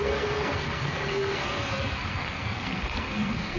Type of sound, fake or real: fake